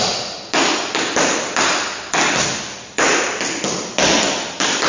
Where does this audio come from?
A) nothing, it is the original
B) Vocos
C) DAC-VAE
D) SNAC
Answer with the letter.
A